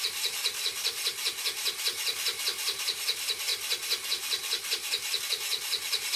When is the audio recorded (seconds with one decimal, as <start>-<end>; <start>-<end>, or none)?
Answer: 0.0-6.2